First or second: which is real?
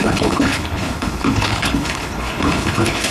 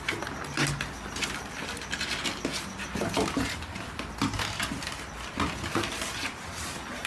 second